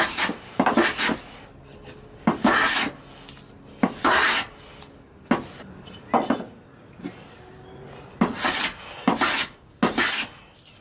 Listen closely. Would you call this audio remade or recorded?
recorded